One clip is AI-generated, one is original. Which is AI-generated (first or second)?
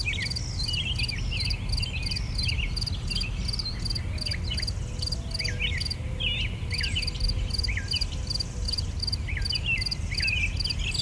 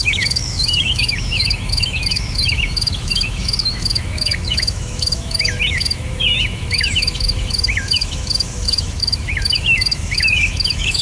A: second